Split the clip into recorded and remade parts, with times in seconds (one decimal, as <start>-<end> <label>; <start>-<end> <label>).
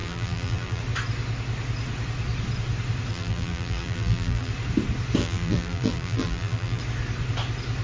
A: 0.0-0.8 remade; 0.8-3.1 recorded; 3.1-4.5 remade; 4.5-5.2 recorded; 5.2-6.8 remade; 6.8-7.8 recorded